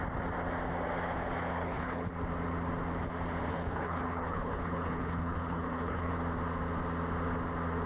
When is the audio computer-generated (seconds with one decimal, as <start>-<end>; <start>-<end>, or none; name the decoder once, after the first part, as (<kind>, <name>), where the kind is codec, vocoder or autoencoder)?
1.5-2.1 (codec, HILCodec); 3.5-6.1